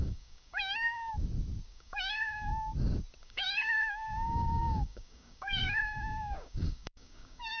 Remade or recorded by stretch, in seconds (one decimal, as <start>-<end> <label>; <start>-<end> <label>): 0.0-1.1 remade; 1.1-1.7 recorded; 1.7-2.5 remade; 2.5-3.2 recorded; 3.2-7.6 remade

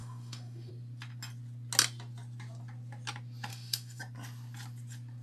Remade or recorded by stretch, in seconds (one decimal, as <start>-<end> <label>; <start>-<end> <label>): 0.0-0.7 remade; 0.7-3.5 recorded; 3.5-4.0 remade; 4.0-5.2 recorded

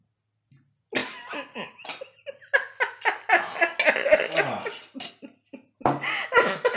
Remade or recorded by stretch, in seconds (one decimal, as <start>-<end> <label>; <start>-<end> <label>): 0.0-6.8 recorded

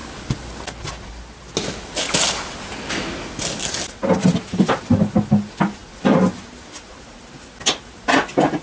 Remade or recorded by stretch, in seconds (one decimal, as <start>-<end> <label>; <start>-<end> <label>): 0.0-8.6 recorded

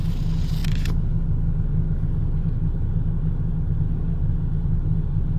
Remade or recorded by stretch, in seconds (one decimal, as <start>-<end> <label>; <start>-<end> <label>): 0.0-5.4 recorded